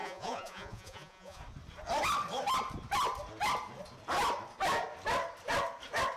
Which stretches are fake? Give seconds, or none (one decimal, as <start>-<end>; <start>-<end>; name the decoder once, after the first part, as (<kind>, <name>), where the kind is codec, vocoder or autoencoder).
0.0-1.4 (vocoder, Vocos)